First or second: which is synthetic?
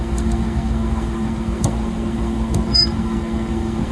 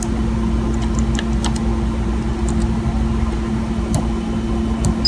first